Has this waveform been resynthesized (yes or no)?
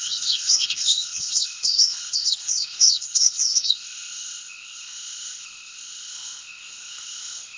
yes